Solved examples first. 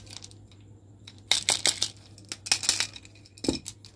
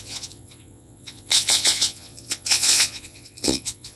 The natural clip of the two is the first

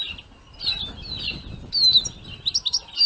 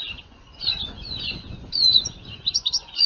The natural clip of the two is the first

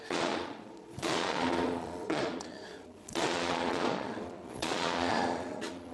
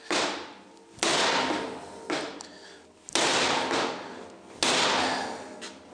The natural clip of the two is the second